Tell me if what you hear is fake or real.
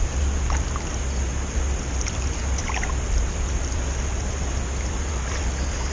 real